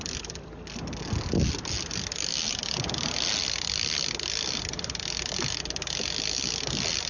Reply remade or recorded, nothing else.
recorded